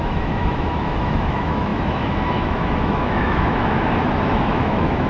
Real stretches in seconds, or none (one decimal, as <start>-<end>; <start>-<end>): none